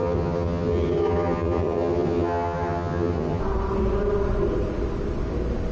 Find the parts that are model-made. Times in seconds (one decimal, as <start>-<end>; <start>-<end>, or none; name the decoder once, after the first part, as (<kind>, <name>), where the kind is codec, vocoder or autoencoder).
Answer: 0.0-3.4 (vocoder, HiFi-GAN)